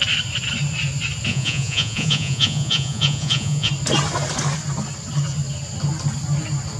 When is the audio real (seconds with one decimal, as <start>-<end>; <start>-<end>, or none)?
0.0-1.3; 3.7-6.8